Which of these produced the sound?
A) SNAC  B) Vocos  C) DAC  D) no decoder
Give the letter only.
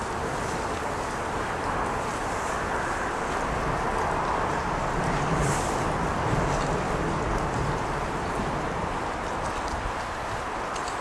D